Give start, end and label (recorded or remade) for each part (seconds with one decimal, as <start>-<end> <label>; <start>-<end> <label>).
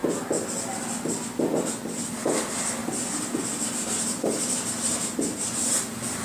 0.0-6.2 recorded